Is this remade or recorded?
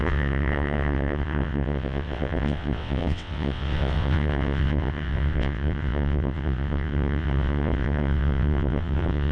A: remade